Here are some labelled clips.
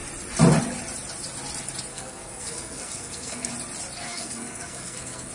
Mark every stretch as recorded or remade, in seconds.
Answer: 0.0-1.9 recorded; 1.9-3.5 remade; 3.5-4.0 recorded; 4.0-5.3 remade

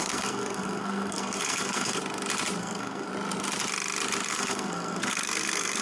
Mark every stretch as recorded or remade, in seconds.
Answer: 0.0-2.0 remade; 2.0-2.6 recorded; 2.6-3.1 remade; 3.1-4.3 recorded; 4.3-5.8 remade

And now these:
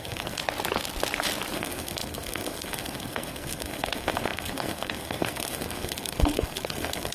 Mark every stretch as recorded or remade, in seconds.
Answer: 0.0-0.4 remade; 0.4-1.5 recorded; 1.5-7.1 remade

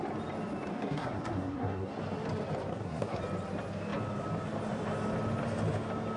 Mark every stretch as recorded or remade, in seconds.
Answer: 0.0-0.7 recorded; 0.7-1.9 remade; 1.9-2.7 recorded; 2.7-3.2 remade; 3.2-6.2 recorded